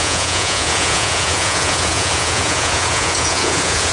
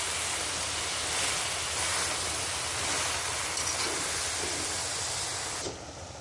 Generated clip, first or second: first